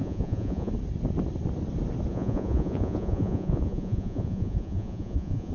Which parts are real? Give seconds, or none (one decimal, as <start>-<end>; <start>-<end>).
0.7-2.1